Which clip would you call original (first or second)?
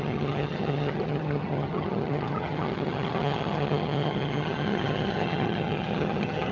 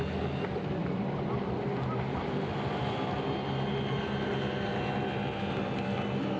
second